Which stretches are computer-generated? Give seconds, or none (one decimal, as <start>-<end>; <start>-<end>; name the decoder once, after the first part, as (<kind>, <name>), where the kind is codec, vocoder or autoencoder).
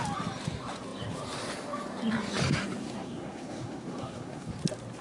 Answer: 2.8-4.5 (codec, SNAC)